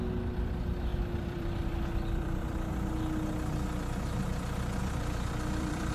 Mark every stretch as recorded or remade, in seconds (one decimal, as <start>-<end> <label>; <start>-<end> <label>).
0.0-0.9 recorded; 0.9-2.7 remade; 2.7-4.8 recorded; 4.8-5.9 remade